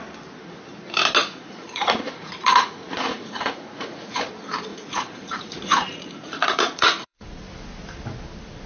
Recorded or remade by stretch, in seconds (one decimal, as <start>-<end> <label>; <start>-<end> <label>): 0.0-1.2 recorded; 1.2-4.3 remade; 4.3-4.7 recorded; 4.7-7.4 remade; 7.4-8.7 recorded